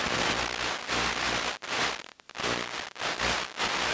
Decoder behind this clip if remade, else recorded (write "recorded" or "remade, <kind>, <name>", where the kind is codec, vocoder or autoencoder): recorded